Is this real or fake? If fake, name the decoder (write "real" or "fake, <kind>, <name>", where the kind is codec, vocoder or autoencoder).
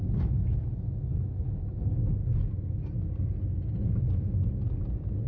real